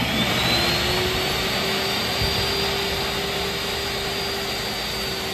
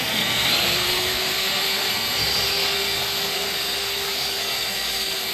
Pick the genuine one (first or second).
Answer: first